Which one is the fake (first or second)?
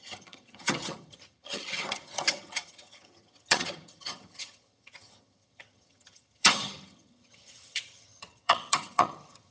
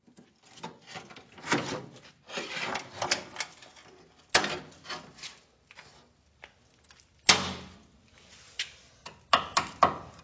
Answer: first